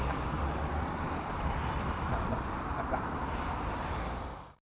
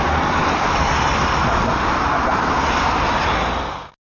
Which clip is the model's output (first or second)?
first